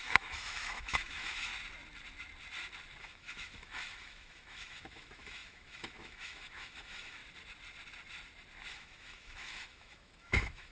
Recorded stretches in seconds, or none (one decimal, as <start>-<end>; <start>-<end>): 1.5-3.0; 7.2-8.7